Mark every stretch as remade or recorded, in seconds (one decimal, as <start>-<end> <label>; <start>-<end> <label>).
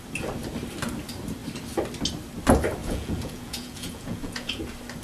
0.0-2.8 recorded; 2.8-4.6 remade; 4.6-5.0 recorded